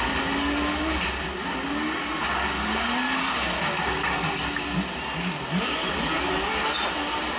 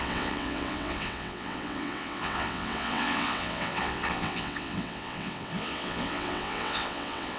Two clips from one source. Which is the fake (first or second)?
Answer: second